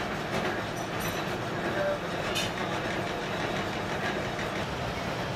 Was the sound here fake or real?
real